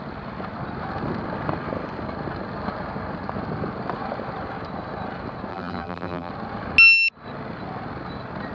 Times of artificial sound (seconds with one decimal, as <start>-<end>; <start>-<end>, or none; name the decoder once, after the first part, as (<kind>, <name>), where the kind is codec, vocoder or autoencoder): 5.5-6.3 (vocoder, BigVGAN v2)